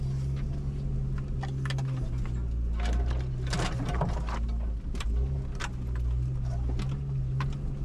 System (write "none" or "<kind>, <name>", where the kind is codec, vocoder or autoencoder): none